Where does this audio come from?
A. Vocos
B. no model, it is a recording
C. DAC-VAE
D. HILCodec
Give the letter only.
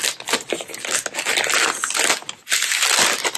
B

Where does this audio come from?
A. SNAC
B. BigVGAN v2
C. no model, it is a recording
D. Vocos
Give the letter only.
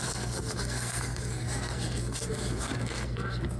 A